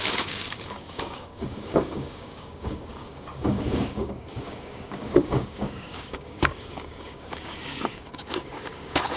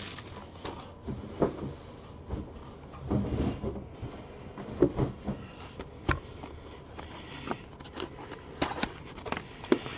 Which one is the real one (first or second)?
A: second